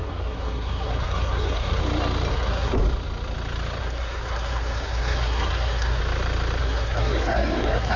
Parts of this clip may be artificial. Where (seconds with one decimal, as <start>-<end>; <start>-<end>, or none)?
0.0-1.8; 2.3-2.7; 3.8-6.0; 6.6-8.0